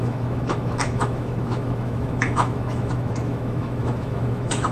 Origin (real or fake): fake